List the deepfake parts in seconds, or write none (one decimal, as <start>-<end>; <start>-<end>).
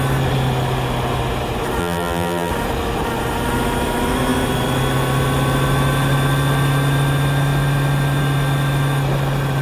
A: 1.8-2.5